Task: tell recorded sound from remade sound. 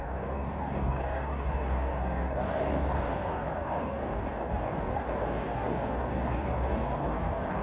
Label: remade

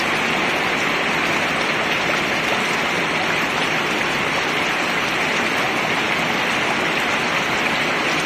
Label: recorded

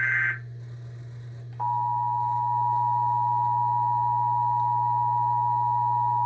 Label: recorded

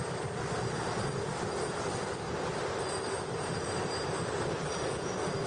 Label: recorded